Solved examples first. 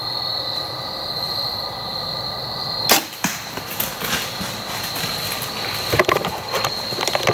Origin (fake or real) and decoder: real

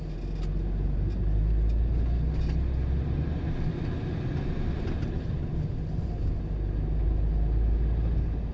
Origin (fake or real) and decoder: real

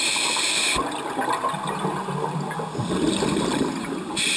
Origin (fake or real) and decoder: real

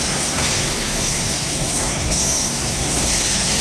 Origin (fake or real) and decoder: fake, codec, SNAC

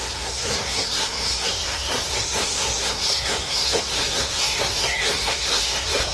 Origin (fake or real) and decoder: fake, codec, SNAC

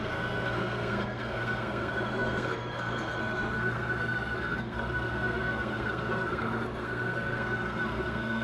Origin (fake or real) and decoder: fake, codec, SNAC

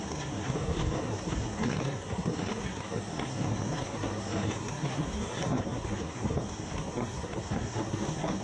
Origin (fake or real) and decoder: fake, codec, SNAC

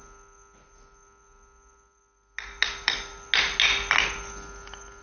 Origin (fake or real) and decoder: real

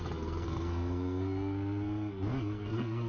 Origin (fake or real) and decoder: fake, codec, SNAC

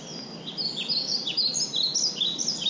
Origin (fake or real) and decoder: real